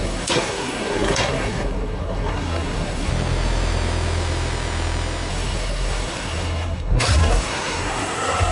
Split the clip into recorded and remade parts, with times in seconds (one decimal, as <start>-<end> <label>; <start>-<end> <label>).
0.0-3.1 remade; 3.1-5.3 recorded; 5.3-8.5 remade